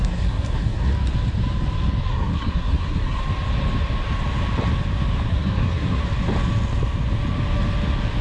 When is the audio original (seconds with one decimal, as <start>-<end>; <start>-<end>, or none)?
0.9-2.1; 3.2-5.3; 6.0-8.2